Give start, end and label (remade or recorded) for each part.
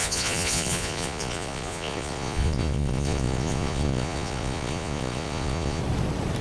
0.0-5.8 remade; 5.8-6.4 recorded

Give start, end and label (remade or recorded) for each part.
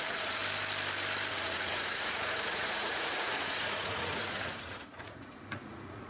0.0-0.4 remade; 0.4-1.3 recorded; 1.3-6.1 remade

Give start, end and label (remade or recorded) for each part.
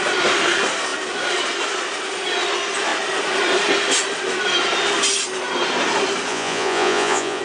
0.0-6.3 recorded; 6.3-7.4 remade